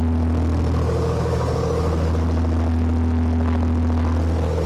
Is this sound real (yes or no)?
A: yes